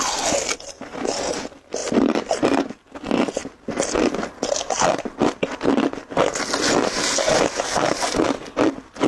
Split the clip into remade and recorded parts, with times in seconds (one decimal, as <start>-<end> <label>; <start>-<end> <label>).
0.0-9.1 recorded